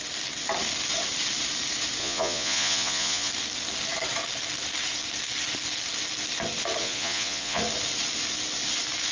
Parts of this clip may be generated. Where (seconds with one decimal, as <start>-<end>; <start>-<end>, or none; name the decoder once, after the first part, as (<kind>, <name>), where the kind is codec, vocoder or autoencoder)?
2.0-3.3 (vocoder, Vocos); 6.8-7.6